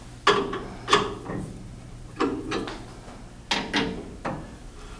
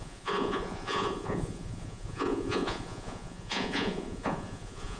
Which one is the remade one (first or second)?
second